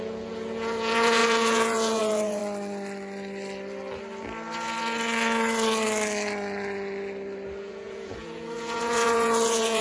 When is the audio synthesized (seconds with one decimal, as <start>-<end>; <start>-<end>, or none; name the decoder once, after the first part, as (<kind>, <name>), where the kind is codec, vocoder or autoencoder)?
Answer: 0.0-2.4 (vocoder, Vocos); 7.6-9.8